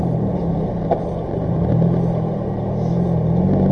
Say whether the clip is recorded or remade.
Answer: recorded